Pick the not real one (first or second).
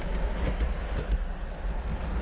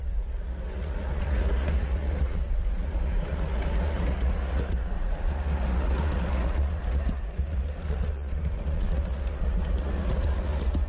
second